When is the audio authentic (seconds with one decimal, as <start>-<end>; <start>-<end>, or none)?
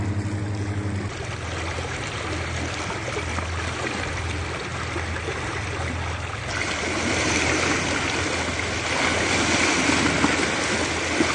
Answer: 0.0-11.3